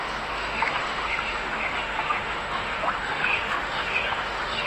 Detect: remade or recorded remade